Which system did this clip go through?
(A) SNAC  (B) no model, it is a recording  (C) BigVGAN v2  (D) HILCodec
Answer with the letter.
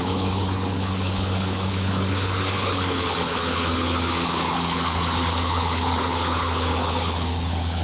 D